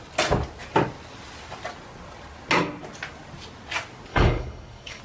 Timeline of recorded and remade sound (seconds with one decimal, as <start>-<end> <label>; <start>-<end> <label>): 0.0-4.1 recorded; 4.1-5.0 remade